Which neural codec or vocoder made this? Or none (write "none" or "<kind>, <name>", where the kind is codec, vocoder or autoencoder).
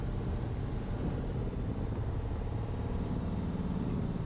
none